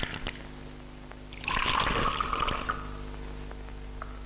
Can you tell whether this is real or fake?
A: real